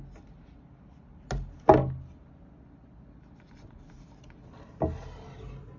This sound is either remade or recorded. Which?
recorded